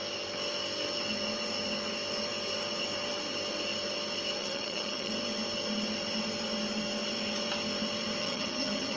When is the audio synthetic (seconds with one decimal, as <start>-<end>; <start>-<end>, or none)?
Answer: 4.4-5.1; 8.2-9.0